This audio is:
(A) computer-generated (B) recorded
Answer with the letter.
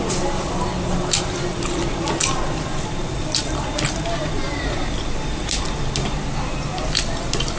B